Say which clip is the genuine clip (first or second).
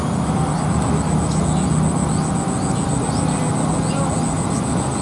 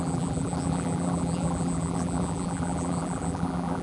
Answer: first